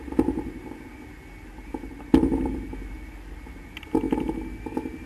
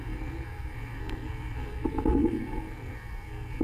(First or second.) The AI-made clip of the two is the second